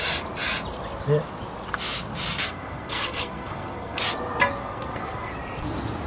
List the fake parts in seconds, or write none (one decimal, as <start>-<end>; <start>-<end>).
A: 2.4-4.0; 4.6-5.3